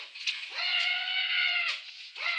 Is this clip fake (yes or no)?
yes